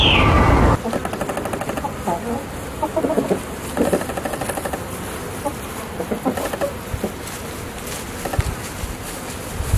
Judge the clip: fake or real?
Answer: real